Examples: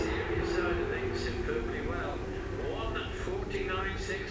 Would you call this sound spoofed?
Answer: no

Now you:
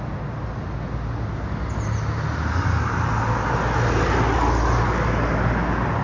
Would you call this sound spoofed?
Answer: no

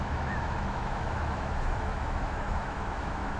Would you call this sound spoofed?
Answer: yes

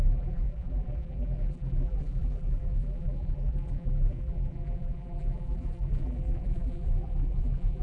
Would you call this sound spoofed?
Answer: yes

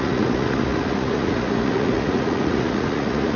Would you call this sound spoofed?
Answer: yes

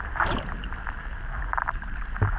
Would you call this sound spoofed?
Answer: no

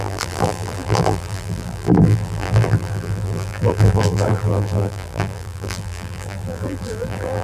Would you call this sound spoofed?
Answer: yes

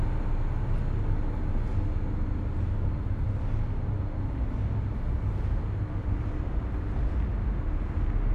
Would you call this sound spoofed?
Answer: no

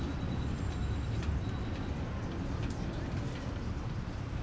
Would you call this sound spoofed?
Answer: no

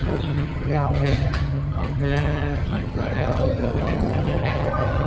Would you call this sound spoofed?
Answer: yes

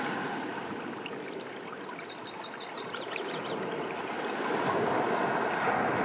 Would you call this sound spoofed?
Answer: no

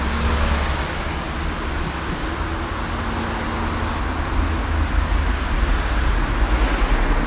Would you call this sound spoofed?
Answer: no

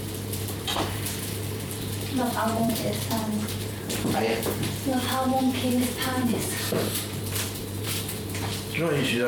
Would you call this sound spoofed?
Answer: yes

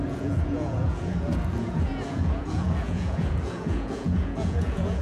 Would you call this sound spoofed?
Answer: yes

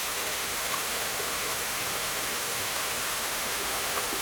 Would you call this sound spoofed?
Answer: yes